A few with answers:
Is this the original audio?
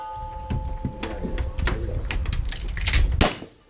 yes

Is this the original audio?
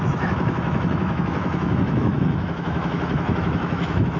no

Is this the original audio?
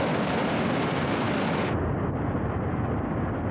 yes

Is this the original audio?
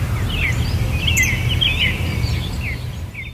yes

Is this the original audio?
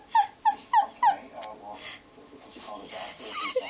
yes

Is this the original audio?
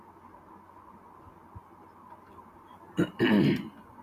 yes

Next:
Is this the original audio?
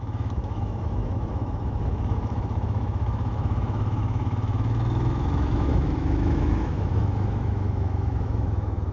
no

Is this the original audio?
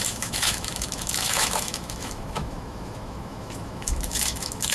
no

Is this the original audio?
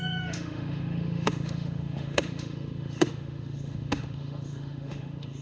no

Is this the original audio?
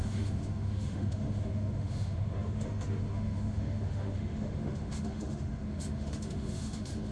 no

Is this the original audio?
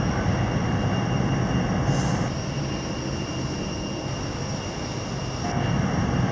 yes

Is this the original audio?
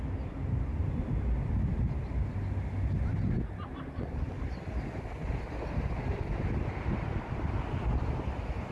yes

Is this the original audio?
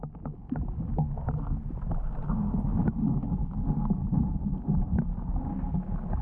yes